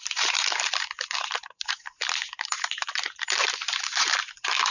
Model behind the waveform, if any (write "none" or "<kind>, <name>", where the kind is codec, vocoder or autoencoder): vocoder, BigVGAN v2